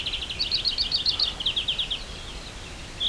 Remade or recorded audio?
recorded